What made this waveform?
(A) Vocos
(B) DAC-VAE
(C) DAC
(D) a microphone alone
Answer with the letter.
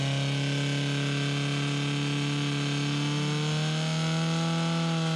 D